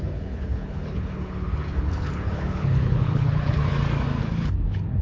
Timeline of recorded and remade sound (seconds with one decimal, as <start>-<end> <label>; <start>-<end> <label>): 0.0-3.6 remade; 3.6-4.2 recorded; 4.2-5.0 remade